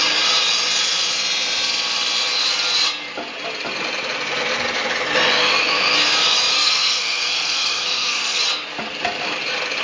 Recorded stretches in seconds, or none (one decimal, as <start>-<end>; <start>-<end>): 0.0-6.5; 8.4-9.8